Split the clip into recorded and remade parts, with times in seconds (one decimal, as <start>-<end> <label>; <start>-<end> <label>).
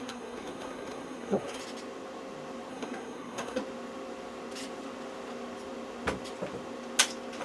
0.0-1.6 remade; 1.6-2.7 recorded; 2.7-3.6 remade; 3.6-7.4 recorded